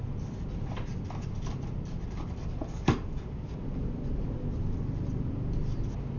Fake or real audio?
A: fake